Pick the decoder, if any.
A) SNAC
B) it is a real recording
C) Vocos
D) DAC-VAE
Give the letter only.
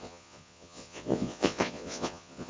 C